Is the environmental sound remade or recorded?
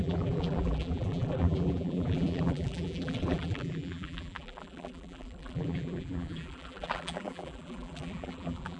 remade